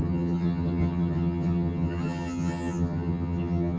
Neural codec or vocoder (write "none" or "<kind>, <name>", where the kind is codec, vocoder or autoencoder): vocoder, HiFi-GAN